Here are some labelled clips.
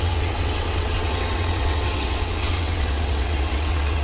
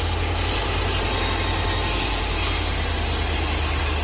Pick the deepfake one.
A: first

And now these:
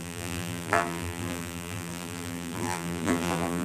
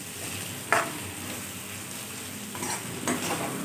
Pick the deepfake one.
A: first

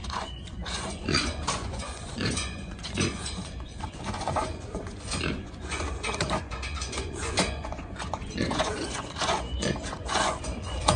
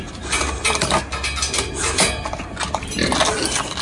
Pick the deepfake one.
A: first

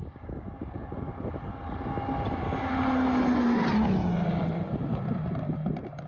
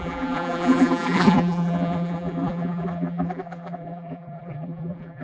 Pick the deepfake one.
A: second